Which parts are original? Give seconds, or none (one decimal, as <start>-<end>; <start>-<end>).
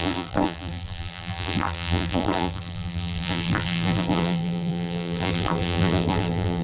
none